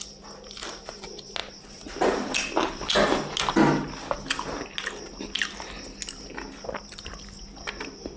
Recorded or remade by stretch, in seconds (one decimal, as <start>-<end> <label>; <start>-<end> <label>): 0.0-8.2 recorded